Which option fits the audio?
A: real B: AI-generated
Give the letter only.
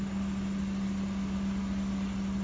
A